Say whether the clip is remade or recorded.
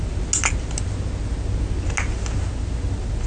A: recorded